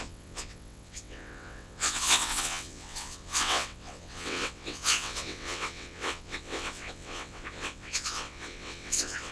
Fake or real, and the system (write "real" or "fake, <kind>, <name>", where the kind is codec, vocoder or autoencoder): fake, vocoder, WaveNeXt